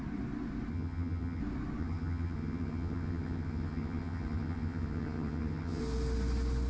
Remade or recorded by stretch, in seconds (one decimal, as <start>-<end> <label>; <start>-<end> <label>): 0.0-0.7 recorded; 0.7-1.4 remade; 1.4-1.8 recorded; 1.8-5.8 remade; 5.8-6.7 recorded